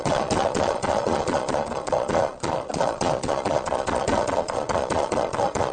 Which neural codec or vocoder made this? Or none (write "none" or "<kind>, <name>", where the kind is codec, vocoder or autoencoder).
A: vocoder, Vocos